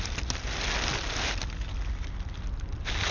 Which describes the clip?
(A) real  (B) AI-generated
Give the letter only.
A